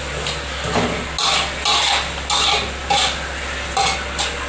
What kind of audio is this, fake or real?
real